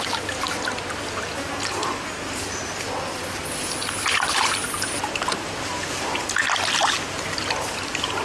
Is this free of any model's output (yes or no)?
yes